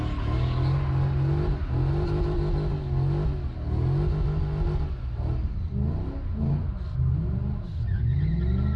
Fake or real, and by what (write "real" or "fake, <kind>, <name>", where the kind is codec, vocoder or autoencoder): real